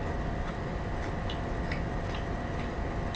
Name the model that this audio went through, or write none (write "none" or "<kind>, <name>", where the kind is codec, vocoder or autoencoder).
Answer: none